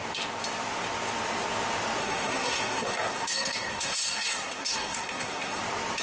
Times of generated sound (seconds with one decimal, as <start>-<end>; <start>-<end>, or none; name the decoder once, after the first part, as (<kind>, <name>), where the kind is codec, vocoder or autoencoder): 2.0-5.6 (codec, SNAC)